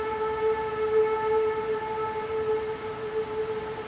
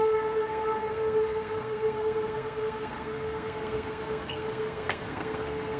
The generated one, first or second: second